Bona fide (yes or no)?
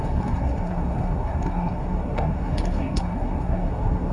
no